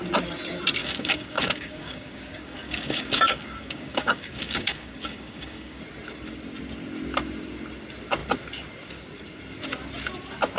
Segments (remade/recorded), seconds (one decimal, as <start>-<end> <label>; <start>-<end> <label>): 0.0-0.8 recorded; 0.8-5.8 remade; 5.8-10.6 recorded